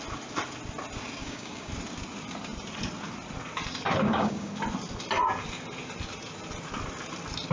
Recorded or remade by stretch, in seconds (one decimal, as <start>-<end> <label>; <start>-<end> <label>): 0.0-1.2 recorded; 1.2-1.7 remade; 1.7-4.0 recorded; 4.0-4.5 remade; 4.5-7.5 recorded